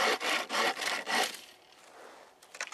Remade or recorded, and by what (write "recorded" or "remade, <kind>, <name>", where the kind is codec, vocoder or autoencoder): remade, vocoder, BigVGAN v2